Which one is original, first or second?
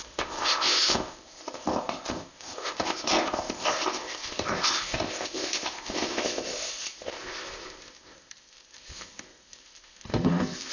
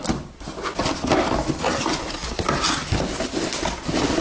second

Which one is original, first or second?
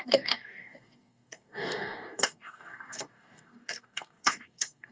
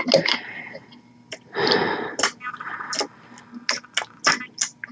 second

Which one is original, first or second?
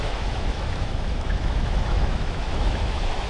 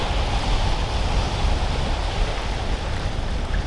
second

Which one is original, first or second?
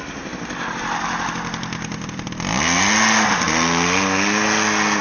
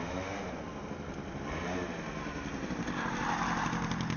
first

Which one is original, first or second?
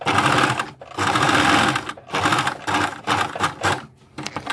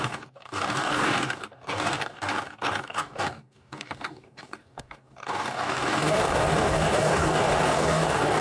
first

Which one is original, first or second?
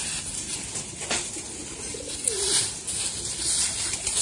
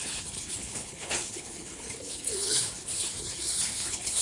first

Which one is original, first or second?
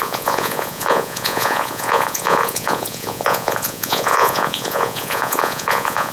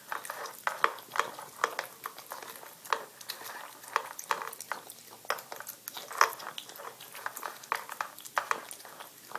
second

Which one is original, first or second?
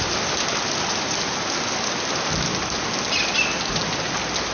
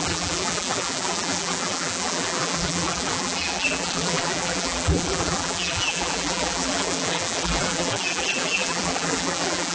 first